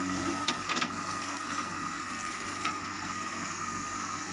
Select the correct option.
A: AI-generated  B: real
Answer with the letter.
A